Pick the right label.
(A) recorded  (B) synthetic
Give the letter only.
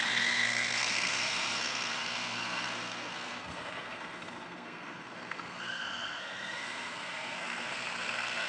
B